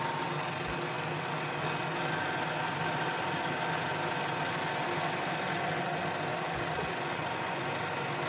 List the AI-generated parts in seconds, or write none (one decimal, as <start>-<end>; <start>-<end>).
6.3-7.7